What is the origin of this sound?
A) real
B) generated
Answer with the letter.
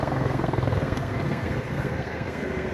B